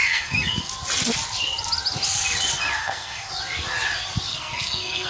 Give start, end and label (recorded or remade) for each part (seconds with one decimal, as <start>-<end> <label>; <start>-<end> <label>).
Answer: 0.0-0.7 remade; 0.7-2.8 recorded; 2.8-3.3 remade; 3.3-4.3 recorded; 4.3-5.1 remade